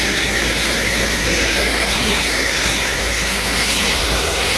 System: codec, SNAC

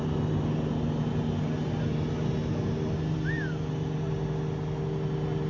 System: none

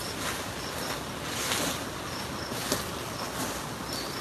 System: none